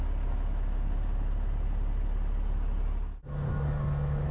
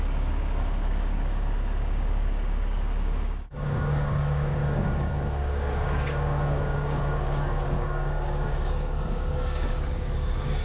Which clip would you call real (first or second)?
first